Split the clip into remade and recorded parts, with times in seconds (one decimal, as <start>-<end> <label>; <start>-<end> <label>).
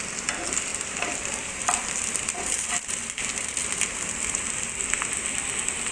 0.0-5.9 recorded